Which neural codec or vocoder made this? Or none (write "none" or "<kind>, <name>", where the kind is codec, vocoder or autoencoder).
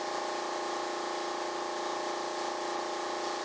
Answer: none